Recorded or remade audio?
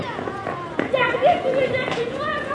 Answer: remade